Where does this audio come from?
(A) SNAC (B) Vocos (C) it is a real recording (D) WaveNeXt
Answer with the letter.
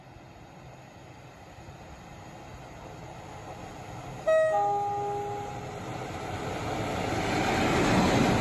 C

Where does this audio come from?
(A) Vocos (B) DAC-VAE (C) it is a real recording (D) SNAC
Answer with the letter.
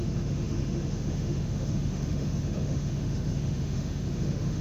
B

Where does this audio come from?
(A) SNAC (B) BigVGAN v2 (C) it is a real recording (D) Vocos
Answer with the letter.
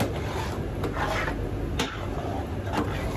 C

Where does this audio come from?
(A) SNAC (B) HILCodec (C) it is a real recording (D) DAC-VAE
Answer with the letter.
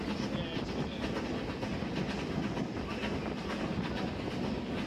C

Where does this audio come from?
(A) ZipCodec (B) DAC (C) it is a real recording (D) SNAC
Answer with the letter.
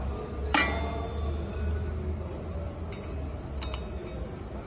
C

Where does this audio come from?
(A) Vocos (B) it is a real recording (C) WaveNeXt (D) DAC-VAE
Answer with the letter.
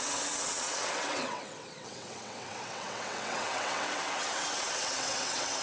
C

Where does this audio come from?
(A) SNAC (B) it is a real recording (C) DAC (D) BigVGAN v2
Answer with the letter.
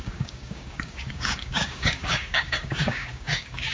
C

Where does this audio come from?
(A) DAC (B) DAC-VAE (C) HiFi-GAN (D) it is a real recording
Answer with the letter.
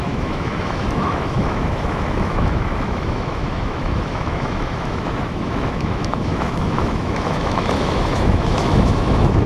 B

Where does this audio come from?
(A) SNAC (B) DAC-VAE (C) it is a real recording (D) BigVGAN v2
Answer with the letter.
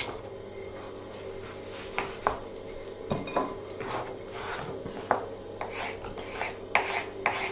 C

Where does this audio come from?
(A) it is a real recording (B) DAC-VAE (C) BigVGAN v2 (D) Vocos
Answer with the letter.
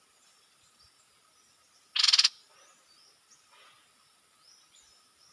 A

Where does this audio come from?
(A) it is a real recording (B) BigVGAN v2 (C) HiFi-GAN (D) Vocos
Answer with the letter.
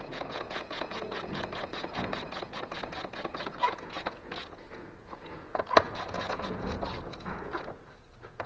D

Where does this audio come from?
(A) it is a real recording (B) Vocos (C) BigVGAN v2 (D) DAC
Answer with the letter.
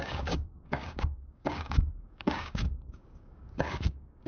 D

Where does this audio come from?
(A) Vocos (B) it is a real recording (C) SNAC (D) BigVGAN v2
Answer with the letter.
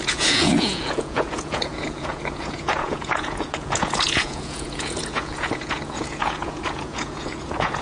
A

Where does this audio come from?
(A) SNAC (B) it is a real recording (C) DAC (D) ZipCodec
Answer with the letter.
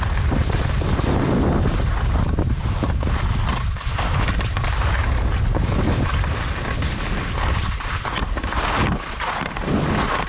B